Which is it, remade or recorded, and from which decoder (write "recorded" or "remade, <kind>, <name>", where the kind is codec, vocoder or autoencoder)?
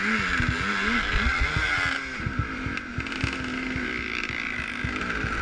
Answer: recorded